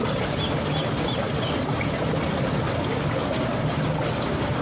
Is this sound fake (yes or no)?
no